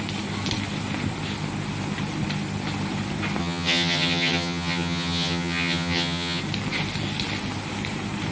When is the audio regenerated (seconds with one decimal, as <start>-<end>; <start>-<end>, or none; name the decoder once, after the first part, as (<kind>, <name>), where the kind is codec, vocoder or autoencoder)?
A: 3.4-6.4 (vocoder, HiFi-GAN)